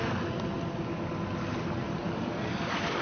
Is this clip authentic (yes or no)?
yes